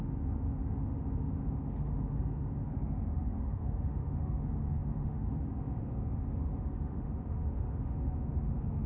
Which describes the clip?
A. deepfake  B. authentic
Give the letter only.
A